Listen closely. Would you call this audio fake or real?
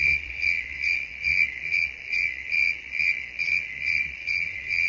fake